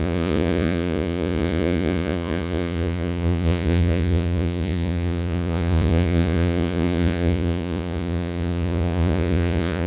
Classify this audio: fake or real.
fake